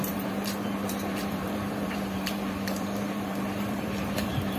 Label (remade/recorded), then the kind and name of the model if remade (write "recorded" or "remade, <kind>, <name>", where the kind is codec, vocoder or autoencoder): remade, vocoder, BigVGAN v2